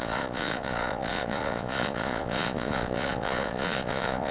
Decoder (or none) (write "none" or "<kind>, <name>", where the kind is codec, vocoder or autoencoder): vocoder, Vocos